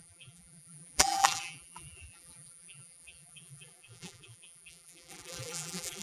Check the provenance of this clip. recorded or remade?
remade